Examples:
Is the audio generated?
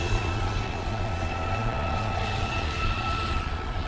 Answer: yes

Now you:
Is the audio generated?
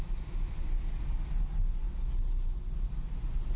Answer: no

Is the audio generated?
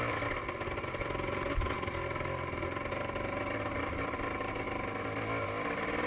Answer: no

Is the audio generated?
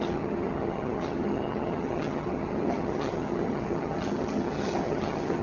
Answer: yes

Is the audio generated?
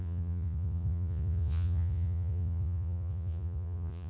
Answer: yes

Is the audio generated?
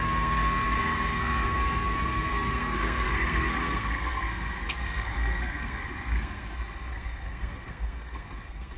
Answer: yes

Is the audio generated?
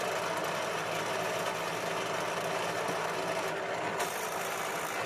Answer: no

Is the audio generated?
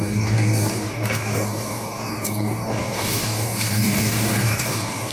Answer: yes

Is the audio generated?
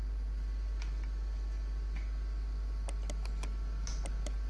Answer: no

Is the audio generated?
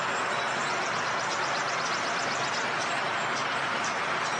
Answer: no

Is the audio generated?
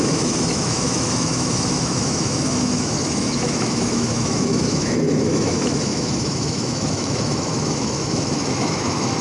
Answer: yes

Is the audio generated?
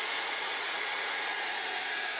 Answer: yes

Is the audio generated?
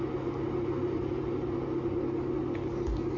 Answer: no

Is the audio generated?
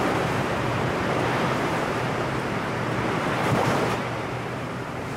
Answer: yes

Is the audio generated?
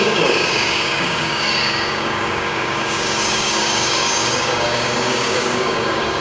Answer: yes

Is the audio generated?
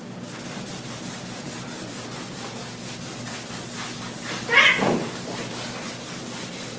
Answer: no